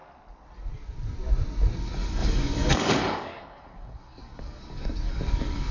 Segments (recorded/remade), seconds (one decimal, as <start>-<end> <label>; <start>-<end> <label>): 0.0-1.8 recorded; 1.8-5.7 remade